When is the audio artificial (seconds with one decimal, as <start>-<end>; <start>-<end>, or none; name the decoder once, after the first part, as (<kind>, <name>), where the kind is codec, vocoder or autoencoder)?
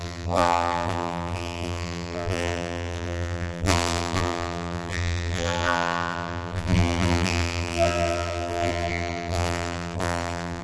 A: 0.0-10.6 (vocoder, BigVGAN v2)